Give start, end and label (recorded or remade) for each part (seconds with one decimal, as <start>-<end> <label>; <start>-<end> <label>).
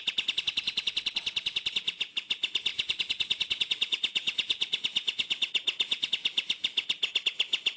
0.0-2.7 recorded; 2.7-6.1 remade; 6.1-7.8 recorded